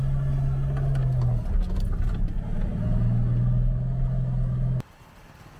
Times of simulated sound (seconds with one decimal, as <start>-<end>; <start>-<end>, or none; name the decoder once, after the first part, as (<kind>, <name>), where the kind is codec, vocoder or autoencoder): none